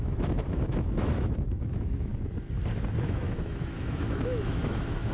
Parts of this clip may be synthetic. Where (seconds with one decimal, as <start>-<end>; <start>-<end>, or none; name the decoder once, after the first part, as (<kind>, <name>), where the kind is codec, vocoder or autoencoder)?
0.0-2.1 (autoencoder, DAC-VAE); 3.0-5.1